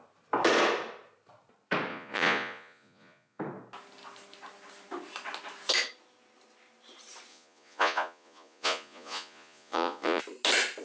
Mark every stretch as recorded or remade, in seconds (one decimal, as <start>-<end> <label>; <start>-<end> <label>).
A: 0.0-1.9 recorded; 1.9-3.4 remade; 3.4-7.3 recorded; 7.3-10.2 remade; 10.2-10.8 recorded